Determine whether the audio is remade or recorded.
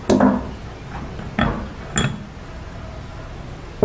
recorded